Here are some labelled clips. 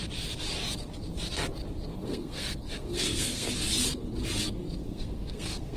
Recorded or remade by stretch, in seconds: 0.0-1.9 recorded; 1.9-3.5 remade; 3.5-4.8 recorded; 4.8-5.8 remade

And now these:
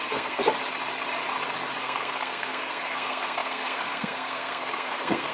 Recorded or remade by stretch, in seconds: 0.0-0.4 remade; 0.4-1.8 recorded; 1.8-5.3 remade

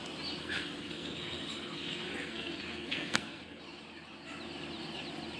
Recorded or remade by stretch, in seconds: 0.0-0.4 recorded; 0.4-3.6 remade; 3.6-5.4 recorded

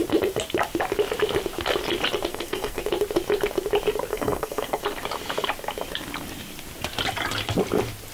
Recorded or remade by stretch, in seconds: 0.0-2.3 recorded; 2.3-2.8 remade; 2.8-4.1 recorded; 4.1-4.8 remade; 4.8-8.1 recorded